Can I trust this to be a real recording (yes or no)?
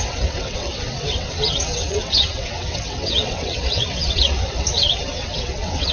no